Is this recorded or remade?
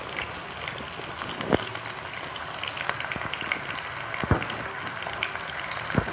recorded